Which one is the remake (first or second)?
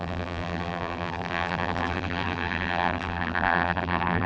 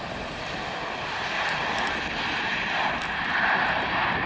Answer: first